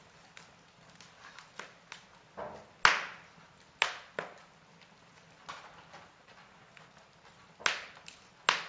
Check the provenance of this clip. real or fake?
real